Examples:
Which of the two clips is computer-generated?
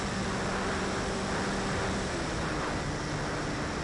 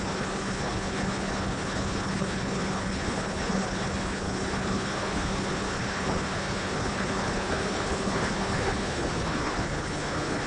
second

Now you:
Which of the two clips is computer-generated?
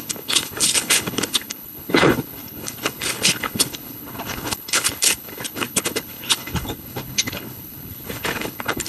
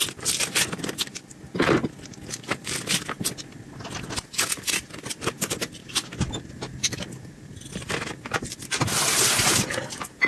first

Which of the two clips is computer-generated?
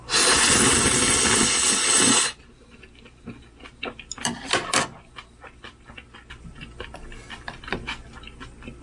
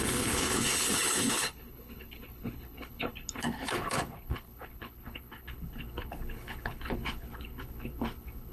second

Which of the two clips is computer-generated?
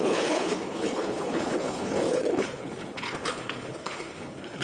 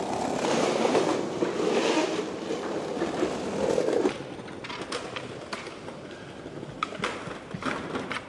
first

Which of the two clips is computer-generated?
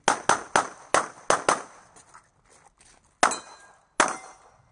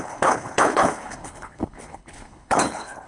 second